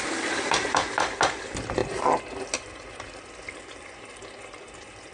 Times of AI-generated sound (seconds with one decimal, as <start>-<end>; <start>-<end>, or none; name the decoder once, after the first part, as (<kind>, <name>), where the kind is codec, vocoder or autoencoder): none